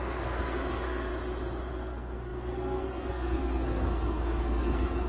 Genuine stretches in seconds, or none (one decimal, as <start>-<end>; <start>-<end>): 1.1-1.7